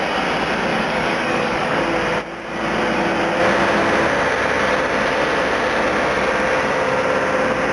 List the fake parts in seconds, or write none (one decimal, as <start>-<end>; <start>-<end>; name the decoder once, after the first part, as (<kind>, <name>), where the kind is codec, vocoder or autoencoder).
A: 0.7-1.8 (codec, DAC)